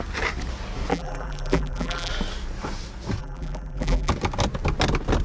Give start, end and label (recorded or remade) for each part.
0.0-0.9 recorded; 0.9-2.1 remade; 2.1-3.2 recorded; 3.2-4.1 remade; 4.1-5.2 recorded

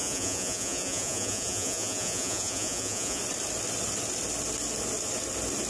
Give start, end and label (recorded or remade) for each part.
0.0-3.2 remade; 3.2-5.7 recorded

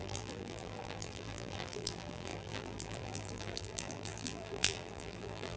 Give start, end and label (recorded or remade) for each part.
0.0-5.6 remade